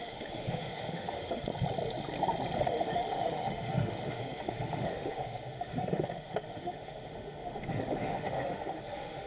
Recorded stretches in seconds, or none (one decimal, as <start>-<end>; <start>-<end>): 1.5-2.6